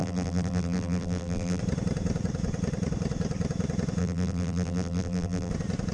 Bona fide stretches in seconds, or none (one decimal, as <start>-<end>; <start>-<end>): 1.6-4.0; 5.5-5.9